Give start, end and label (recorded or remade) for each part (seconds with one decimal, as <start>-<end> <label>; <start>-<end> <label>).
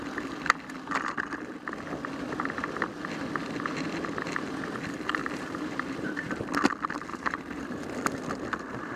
0.0-5.2 recorded; 5.2-6.3 remade; 6.3-7.1 recorded; 7.1-7.8 remade; 7.8-9.0 recorded